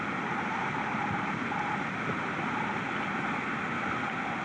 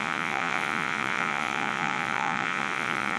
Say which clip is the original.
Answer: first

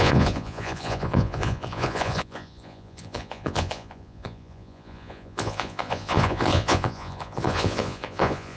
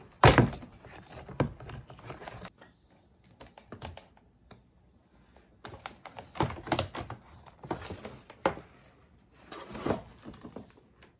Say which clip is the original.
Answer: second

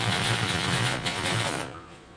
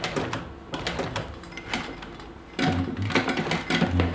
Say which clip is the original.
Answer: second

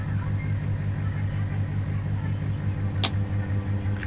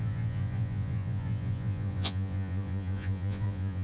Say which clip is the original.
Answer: first